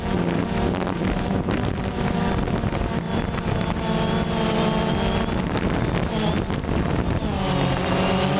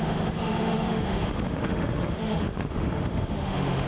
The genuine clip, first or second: first